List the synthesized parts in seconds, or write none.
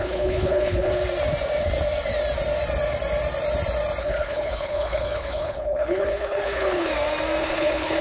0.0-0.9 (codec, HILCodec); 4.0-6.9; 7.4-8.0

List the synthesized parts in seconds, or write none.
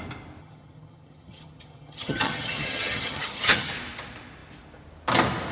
0.4-3.7 (vocoder, HiFi-GAN)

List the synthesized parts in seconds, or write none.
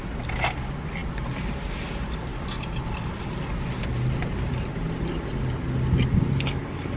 none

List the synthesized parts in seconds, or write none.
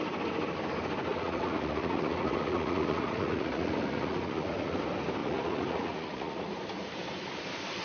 1.1-4.8 (vocoder, Vocos); 5.2-6.5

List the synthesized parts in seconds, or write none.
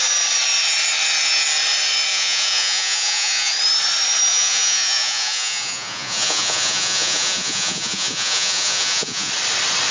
2.1-3.5 (vocoder, Vocos); 4.3-9.3